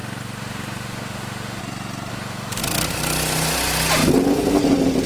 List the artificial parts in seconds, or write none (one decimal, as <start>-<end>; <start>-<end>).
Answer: 0.0-1.6; 2.1-2.6